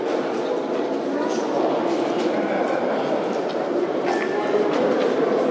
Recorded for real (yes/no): no